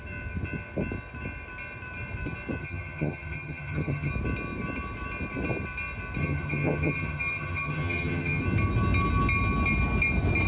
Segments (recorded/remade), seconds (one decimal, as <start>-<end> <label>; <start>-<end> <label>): 0.0-2.6 recorded; 2.6-4.1 remade; 4.1-6.2 recorded; 6.2-8.4 remade; 8.4-10.5 recorded